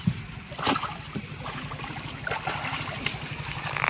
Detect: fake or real real